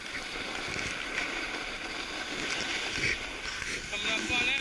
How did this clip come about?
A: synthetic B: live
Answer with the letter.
B